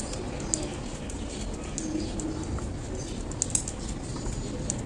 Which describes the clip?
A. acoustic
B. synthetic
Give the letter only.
A